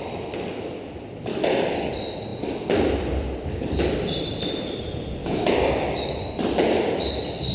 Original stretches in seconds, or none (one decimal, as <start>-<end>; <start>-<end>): 0.0-1.3; 1.9-5.2; 6.2-7.5